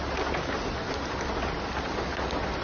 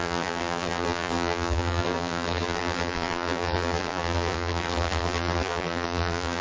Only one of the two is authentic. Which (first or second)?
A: first